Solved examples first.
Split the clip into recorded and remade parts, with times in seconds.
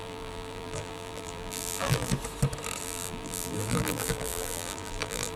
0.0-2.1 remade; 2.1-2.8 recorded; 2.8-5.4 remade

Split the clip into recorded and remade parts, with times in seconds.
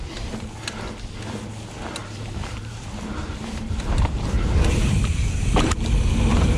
0.0-2.0 recorded; 2.0-5.9 remade; 5.9-6.6 recorded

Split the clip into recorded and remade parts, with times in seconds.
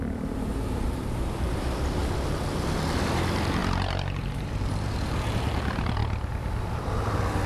0.0-2.0 remade; 2.0-3.0 recorded; 3.0-3.6 remade; 3.6-4.2 recorded; 4.2-6.0 remade; 6.0-7.5 recorded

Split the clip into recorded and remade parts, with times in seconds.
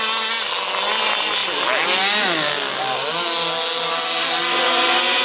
0.0-5.2 recorded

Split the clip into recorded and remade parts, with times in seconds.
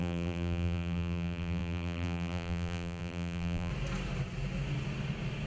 0.0-3.7 remade; 3.7-5.5 recorded